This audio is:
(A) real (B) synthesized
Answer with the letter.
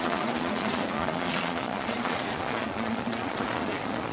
B